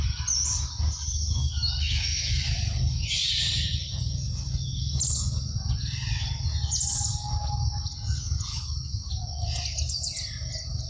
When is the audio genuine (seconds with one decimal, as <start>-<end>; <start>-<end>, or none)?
0.0-1.4; 2.5-8.5; 9.1-10.9